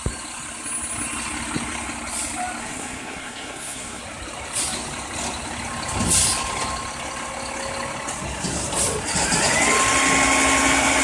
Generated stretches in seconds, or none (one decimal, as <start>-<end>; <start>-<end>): 2.6-4.0